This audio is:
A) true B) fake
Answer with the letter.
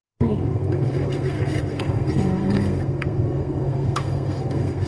B